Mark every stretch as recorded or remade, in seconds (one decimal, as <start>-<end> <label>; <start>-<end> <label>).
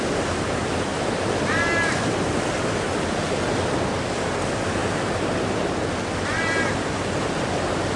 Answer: 0.0-0.9 remade; 0.9-3.5 recorded; 3.5-4.8 remade; 4.8-7.3 recorded; 7.3-8.0 remade